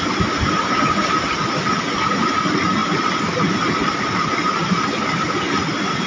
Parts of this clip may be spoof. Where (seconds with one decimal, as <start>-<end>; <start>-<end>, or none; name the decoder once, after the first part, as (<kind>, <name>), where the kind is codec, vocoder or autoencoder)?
none